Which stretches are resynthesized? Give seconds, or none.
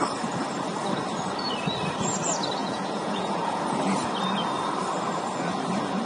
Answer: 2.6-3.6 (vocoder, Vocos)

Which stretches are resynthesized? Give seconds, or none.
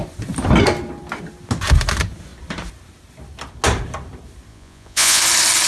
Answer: 4.5-5.2 (vocoder, Vocos)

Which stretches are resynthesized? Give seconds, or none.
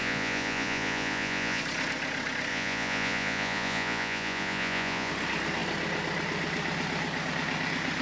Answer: 0.0-1.6 (vocoder, Vocos); 2.5-5.1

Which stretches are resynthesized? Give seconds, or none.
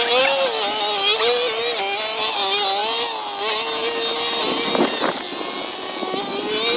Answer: none